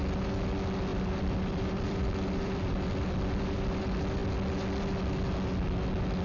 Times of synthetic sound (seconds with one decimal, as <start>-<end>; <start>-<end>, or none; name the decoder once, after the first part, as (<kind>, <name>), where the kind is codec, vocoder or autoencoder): 0.9-3.8 (vocoder, BigVGAN v2)